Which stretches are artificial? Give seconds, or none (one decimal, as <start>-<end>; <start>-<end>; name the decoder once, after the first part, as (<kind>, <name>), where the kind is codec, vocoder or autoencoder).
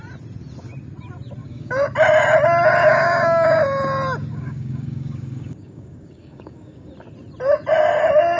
1.4-1.9 (codec, DAC); 2.8-3.6; 4.3-6.9